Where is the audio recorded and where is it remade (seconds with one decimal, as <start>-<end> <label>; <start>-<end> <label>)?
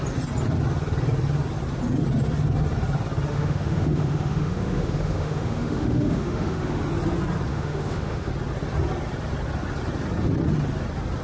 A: 0.0-3.3 recorded; 3.3-6.8 remade; 6.8-7.5 recorded; 7.5-8.3 remade; 8.3-11.2 recorded